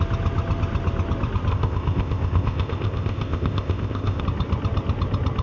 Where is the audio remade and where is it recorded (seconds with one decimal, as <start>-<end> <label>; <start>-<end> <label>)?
0.0-1.5 recorded; 1.5-4.2 remade; 4.2-5.4 recorded